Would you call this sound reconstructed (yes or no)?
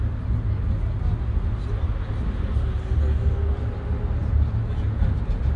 no